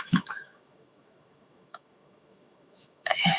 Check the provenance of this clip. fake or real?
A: fake